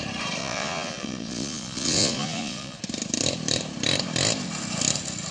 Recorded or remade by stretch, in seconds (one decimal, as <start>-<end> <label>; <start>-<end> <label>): 0.0-0.4 recorded; 0.4-2.8 remade; 2.8-5.3 recorded